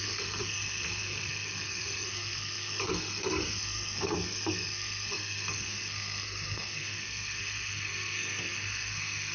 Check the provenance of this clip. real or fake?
fake